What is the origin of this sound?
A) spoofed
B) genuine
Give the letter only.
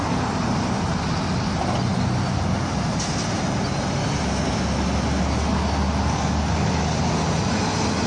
B